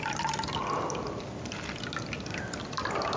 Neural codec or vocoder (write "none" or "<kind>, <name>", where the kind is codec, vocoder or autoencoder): none